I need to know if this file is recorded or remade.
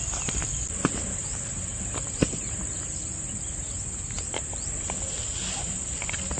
remade